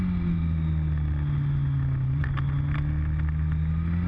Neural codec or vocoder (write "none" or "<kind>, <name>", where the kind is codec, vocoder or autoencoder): none